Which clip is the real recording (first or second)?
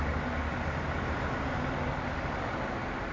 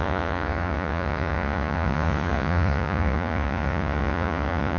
first